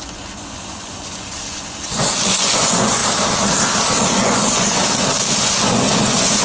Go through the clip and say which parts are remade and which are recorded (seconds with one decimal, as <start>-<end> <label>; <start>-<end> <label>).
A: 0.0-3.0 remade; 3.0-4.1 recorded; 4.1-4.8 remade; 4.8-5.4 recorded; 5.4-6.4 remade